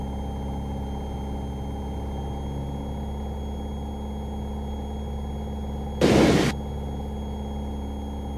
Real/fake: real